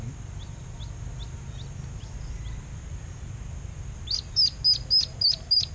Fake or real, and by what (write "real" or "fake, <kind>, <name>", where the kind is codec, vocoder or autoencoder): real